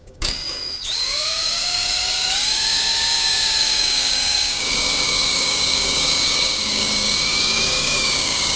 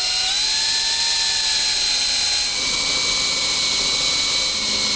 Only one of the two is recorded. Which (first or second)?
second